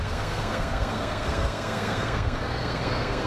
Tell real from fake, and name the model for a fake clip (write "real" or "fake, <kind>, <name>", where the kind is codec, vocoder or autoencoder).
fake, codec, SNAC